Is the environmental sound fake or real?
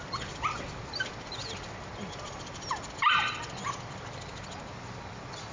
real